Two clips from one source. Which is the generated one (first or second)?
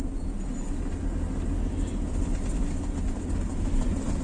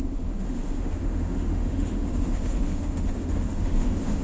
second